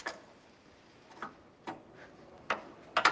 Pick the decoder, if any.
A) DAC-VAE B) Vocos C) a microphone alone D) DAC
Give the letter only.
C